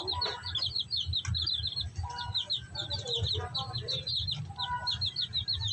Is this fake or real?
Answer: real